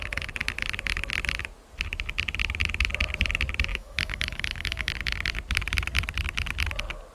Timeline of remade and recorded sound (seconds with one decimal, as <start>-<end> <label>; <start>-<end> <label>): 0.0-3.7 recorded; 3.7-4.9 remade; 4.9-7.1 recorded